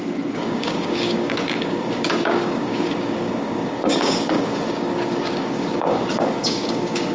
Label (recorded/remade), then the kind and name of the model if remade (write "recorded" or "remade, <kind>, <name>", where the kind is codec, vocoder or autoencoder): remade, codec, DAC